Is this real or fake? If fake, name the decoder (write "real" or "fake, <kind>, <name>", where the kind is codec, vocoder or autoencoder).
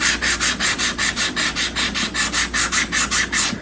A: real